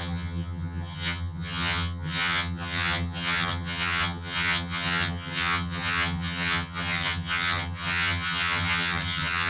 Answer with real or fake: fake